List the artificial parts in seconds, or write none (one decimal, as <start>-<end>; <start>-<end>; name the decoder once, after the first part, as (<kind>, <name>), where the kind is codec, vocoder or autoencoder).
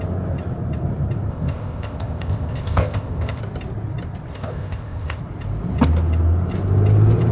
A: 1.3-3.4 (codec, ZipCodec); 4.3-5.2